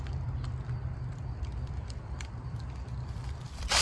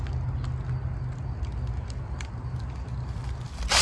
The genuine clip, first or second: second